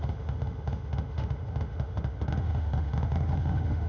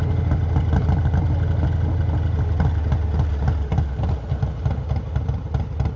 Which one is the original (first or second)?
second